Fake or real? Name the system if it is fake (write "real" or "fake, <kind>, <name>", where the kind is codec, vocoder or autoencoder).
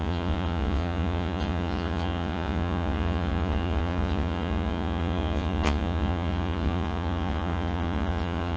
fake, vocoder, Vocos